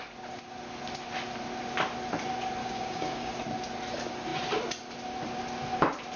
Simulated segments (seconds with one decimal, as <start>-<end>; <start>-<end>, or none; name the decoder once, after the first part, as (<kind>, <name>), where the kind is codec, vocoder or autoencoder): 2.6-3.3 (codec, DAC)